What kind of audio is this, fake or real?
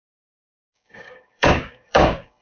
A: fake